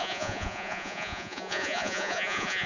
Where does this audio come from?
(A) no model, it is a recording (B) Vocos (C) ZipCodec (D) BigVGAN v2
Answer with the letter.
B